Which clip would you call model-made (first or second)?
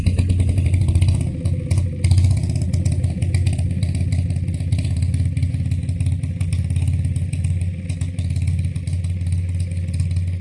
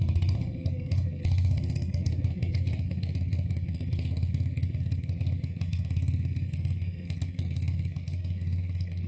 second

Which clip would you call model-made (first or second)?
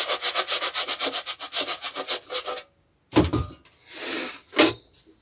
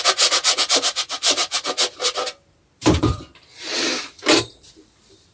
second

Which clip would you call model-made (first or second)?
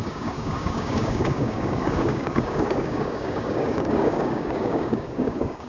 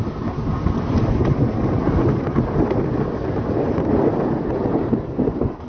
first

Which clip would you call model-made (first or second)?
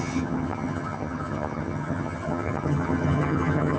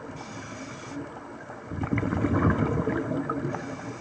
first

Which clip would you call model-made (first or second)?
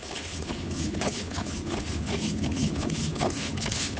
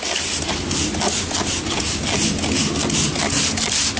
first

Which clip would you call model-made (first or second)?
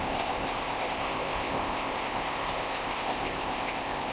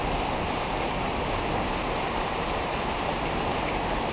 first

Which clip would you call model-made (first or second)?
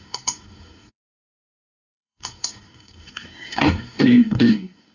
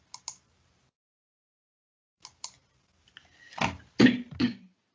first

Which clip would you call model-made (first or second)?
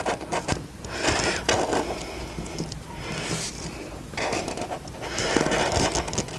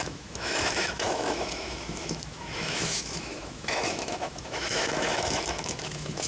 second